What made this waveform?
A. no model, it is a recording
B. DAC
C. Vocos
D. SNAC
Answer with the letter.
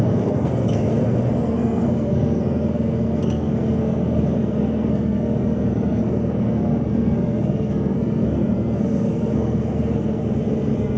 D